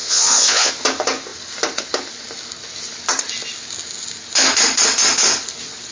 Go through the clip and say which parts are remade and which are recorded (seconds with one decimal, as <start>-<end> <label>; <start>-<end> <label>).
0.0-0.7 remade; 0.7-5.9 recorded